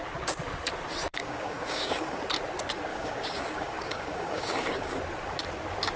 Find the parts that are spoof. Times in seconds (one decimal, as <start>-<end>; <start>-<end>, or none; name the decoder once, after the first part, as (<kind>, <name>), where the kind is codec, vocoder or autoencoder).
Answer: 1.1-2.2 (codec, DAC); 2.9-5.0